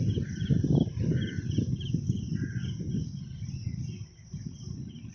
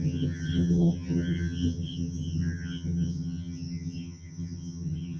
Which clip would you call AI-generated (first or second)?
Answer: second